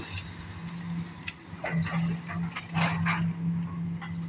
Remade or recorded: recorded